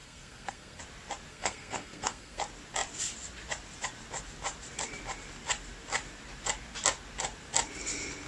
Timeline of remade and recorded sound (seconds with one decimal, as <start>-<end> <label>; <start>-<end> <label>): 0.0-0.8 remade; 0.8-1.3 recorded; 1.3-2.4 remade; 2.4-8.3 recorded